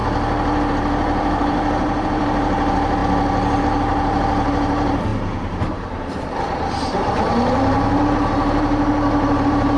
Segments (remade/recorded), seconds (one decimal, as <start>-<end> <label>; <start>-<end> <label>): 0.0-0.7 recorded; 0.7-3.0 remade; 3.0-3.6 recorded; 3.6-9.8 remade